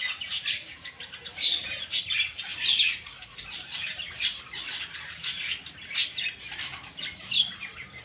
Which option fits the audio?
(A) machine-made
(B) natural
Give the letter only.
B